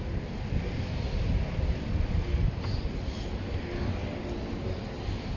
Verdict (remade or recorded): recorded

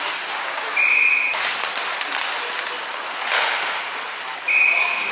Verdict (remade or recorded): recorded